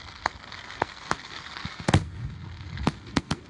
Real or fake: fake